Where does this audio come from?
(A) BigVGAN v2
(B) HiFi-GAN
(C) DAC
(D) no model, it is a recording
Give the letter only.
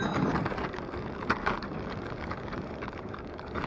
C